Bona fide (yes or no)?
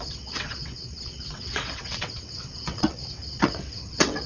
no